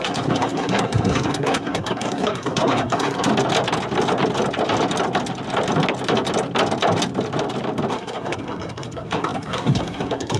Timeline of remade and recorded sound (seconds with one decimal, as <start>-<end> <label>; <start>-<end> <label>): 0.0-3.3 remade; 3.3-7.9 recorded; 7.9-10.4 remade